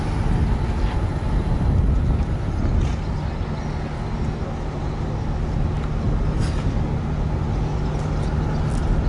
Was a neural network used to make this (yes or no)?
no